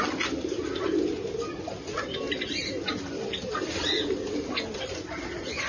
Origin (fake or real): real